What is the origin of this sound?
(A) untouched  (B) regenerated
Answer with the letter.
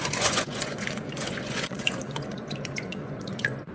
B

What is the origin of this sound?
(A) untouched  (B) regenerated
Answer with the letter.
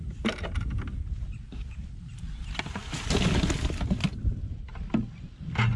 A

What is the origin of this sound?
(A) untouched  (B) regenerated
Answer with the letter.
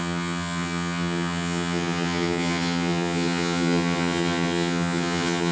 B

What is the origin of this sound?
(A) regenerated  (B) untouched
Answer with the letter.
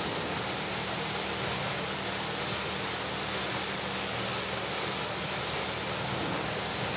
B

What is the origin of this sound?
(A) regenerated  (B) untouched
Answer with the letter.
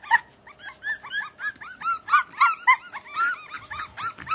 B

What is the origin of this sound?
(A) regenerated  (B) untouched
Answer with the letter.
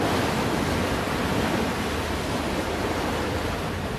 B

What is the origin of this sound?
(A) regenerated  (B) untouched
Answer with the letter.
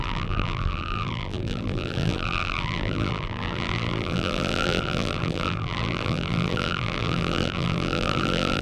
A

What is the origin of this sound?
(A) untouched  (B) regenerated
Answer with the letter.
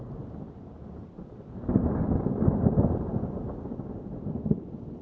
A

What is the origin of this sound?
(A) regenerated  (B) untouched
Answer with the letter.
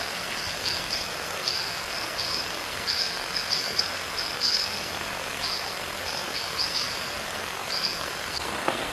A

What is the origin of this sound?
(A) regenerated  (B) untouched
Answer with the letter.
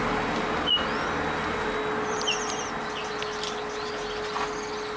B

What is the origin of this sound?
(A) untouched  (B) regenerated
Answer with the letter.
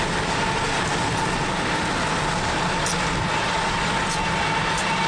A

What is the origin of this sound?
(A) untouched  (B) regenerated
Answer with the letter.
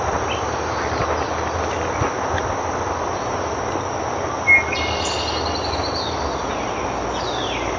A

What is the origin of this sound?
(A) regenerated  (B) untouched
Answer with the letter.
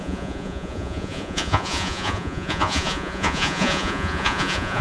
A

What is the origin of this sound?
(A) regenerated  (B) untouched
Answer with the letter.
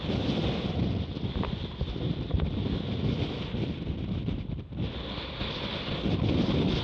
B